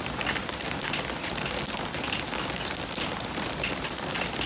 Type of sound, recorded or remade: recorded